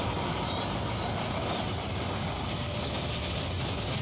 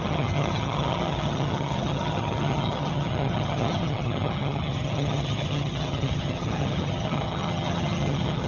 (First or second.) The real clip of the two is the first